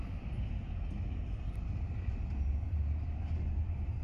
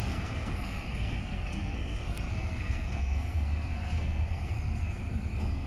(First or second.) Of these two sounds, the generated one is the second